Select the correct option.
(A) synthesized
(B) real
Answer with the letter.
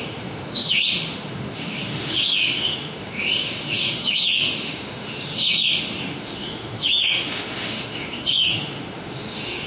A